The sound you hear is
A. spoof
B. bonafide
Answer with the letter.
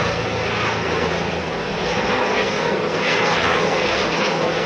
A